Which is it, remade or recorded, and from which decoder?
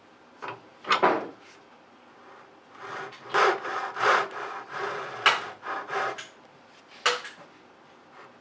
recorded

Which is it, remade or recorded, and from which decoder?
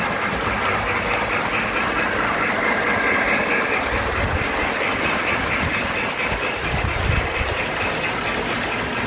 recorded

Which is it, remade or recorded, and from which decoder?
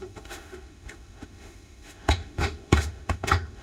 remade, autoencoder, DAC-VAE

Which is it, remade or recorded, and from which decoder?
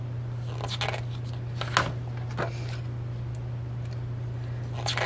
recorded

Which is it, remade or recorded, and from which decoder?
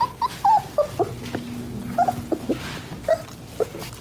recorded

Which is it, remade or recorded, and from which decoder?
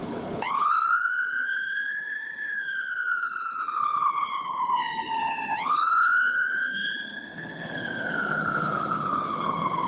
remade, codec, HILCodec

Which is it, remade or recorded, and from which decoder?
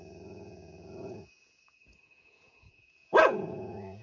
remade, vocoder, Vocos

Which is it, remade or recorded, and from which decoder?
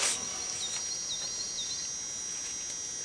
recorded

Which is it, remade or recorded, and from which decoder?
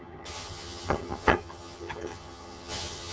remade, vocoder, HiFi-GAN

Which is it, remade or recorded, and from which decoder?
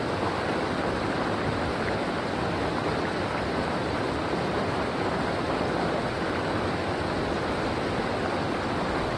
recorded